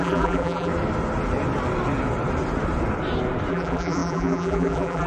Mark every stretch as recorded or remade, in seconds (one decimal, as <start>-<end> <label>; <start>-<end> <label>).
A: 0.0-0.7 remade; 0.7-3.5 recorded; 3.5-5.1 remade